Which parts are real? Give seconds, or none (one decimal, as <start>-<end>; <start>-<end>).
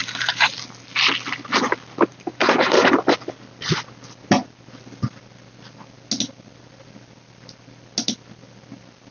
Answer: 0.6-2.1; 3.0-9.1